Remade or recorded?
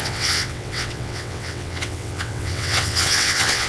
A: remade